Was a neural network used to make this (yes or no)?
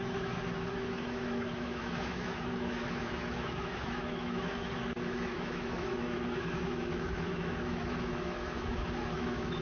yes